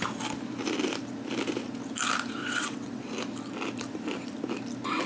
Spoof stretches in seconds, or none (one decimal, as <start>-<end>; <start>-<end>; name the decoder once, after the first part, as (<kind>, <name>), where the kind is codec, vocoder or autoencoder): 2.4-3.1 (vocoder, WaveNeXt)